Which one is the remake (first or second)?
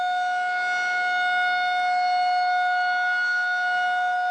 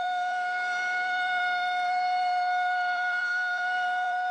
second